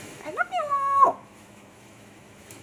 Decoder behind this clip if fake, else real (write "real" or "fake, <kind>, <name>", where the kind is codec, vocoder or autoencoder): fake, autoencoder, DAC-VAE